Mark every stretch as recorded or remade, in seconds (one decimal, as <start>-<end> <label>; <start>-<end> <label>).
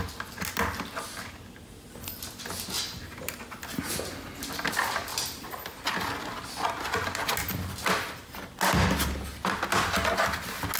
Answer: 0.0-10.8 recorded